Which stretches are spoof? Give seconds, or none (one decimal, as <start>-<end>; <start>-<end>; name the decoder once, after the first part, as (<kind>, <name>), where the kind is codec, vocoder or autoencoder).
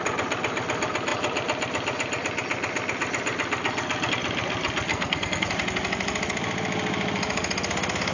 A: 4.9-5.5 (codec, SNAC)